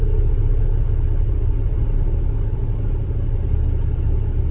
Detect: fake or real real